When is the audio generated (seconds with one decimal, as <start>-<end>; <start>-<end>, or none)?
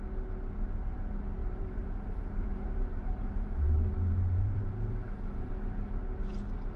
1.4-5.5